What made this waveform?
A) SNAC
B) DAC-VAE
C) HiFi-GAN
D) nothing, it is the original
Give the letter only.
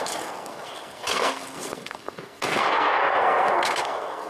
A